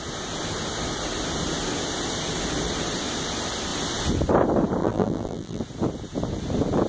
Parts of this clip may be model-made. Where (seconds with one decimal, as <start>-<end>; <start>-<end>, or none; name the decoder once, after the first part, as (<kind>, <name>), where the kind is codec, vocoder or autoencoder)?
4.8-5.6 (vocoder, BigVGAN v2)